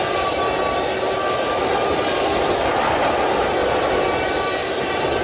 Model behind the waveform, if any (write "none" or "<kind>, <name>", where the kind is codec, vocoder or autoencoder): none